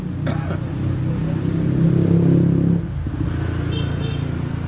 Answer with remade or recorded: recorded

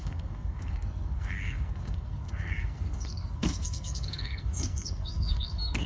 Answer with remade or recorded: remade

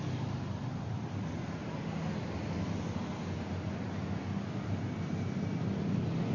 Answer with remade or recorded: recorded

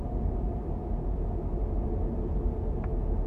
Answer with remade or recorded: recorded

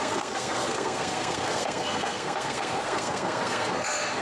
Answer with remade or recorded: remade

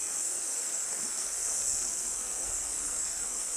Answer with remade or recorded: remade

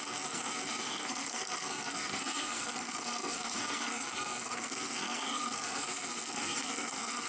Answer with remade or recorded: remade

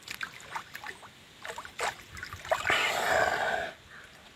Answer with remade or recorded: recorded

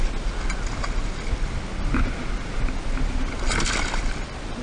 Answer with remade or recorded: recorded